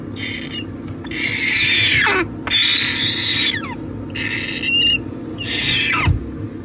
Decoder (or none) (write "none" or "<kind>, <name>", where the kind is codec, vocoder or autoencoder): none